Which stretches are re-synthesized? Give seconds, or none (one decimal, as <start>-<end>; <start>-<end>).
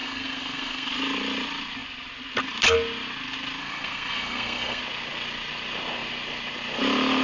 0.0-0.9; 3.6-4.8